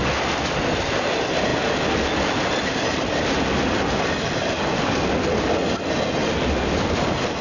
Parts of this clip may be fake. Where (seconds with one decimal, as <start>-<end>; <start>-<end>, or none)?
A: none